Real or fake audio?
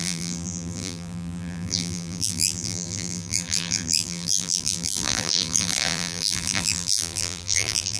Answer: fake